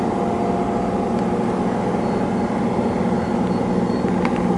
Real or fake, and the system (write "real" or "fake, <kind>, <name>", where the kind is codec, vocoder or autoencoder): real